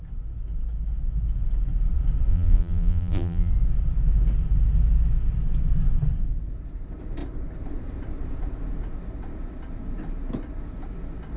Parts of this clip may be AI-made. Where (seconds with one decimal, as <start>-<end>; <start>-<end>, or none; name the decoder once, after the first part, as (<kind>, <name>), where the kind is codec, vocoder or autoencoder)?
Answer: 2.3-3.5 (vocoder, BigVGAN v2)